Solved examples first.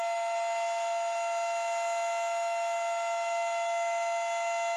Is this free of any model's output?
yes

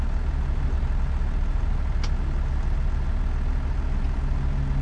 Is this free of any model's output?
yes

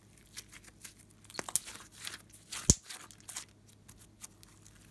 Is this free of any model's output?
yes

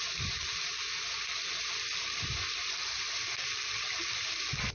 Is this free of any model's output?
no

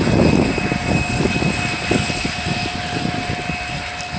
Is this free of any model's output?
yes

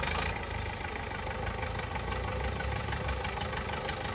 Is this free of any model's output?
yes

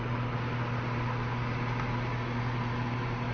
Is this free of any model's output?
yes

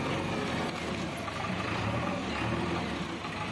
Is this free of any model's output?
yes